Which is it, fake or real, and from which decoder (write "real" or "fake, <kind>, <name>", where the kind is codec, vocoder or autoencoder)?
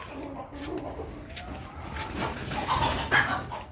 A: real